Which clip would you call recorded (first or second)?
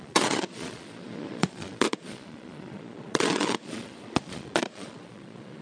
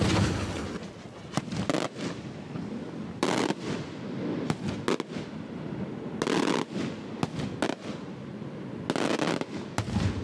second